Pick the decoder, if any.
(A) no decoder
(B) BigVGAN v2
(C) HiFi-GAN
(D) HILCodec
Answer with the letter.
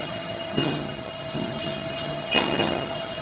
C